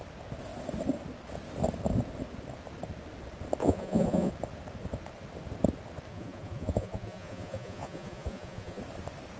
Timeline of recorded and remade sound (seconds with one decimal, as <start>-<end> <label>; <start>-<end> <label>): 0.0-3.6 recorded; 3.6-4.3 remade; 4.3-6.1 recorded; 6.1-8.8 remade; 8.8-9.4 recorded